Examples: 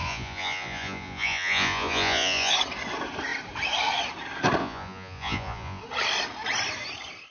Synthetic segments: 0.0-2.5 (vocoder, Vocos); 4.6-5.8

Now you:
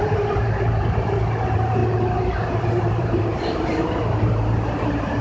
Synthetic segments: 0.0-1.8 (vocoder, BigVGAN v2); 2.5-5.2

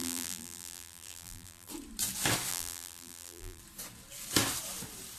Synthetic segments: 0.0-1.7 (vocoder, BigVGAN v2); 2.5-3.6